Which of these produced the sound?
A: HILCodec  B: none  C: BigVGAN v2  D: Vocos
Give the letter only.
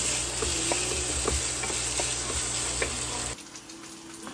B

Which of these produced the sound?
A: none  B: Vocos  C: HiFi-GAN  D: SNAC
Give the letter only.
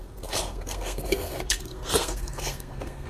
D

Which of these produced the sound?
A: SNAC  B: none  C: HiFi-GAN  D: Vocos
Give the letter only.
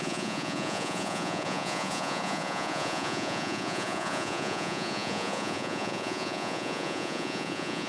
D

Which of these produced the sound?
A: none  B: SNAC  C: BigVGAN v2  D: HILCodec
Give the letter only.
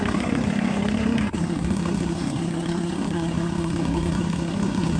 B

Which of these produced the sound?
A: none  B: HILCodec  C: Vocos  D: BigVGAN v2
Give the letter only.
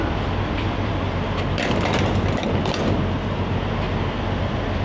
A